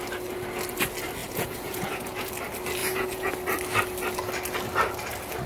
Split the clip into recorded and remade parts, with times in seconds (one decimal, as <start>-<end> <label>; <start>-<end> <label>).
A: 0.0-1.2 recorded; 1.2-2.3 remade; 2.3-2.8 recorded; 2.8-3.3 remade; 3.3-5.5 recorded